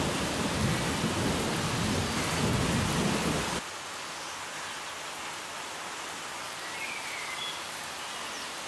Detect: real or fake real